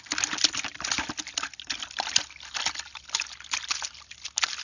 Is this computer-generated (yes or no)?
no